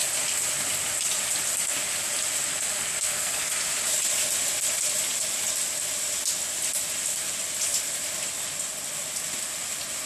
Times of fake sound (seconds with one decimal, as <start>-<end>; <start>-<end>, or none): 2.5-3.5